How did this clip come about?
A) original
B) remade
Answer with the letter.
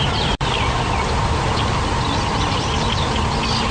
A